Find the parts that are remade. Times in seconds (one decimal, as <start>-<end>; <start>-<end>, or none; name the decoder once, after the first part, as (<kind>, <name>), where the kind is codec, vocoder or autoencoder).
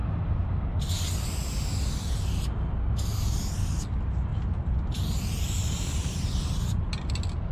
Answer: 4.3-7.1 (vocoder, BigVGAN v2)